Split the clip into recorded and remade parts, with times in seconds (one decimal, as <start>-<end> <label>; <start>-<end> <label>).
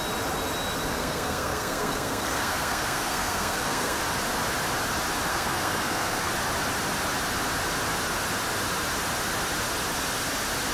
0.0-0.9 recorded; 0.9-4.0 remade; 4.0-5.3 recorded; 5.3-6.3 remade; 6.3-10.7 recorded